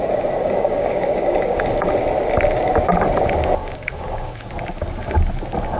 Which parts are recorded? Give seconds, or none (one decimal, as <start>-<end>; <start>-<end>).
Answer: 0.0-0.4; 1.9-3.6; 4.5-5.8